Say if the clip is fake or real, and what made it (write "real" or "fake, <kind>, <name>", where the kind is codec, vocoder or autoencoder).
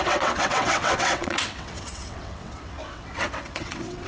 fake, vocoder, WaveNeXt